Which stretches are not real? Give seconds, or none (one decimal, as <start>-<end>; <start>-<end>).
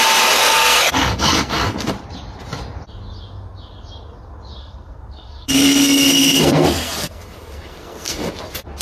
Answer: 0.4-1.9; 4.6-8.3